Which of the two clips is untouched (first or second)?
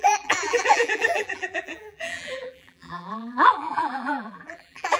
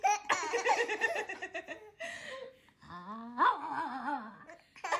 second